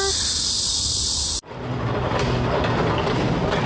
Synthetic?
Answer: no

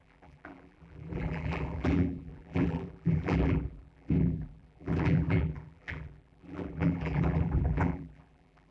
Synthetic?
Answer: yes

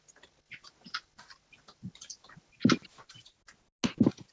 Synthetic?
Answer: no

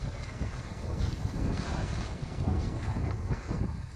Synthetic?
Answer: yes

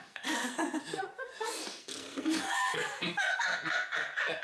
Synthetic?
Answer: yes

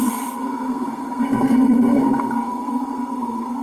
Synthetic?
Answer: yes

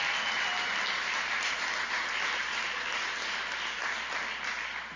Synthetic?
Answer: no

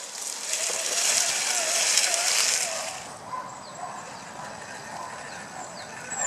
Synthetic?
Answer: no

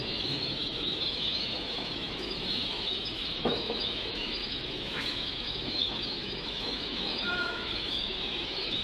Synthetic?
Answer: yes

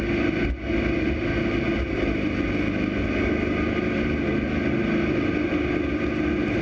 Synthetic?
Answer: no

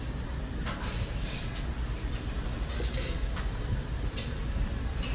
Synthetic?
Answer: yes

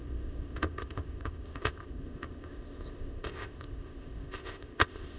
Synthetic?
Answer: yes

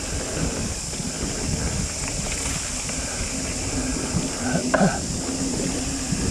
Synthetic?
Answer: no